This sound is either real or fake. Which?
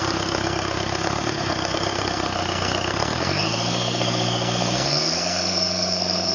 fake